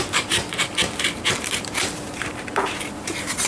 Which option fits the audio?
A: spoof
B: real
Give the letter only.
A